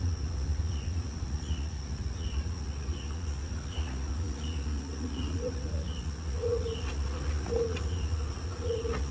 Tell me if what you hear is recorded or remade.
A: remade